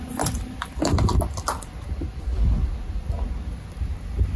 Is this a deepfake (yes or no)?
no